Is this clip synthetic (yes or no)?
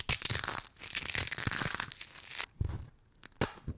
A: no